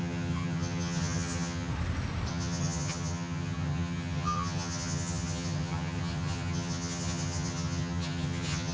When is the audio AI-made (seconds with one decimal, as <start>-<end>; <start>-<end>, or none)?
0.0-1.7; 2.3-8.7